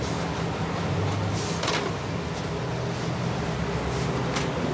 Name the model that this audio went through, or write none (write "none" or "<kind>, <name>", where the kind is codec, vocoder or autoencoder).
none